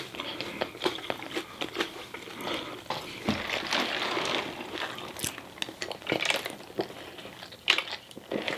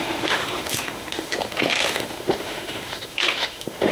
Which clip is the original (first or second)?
first